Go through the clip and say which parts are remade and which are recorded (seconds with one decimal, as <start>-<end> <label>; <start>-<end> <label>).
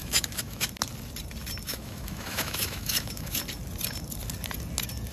0.0-0.7 remade; 0.7-1.7 recorded; 1.7-3.4 remade; 3.4-5.1 recorded